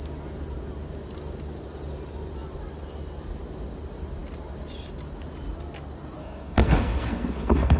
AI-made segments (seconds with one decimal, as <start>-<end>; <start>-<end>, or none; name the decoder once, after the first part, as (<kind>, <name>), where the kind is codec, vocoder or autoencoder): 6.2-7.8 (codec, SNAC)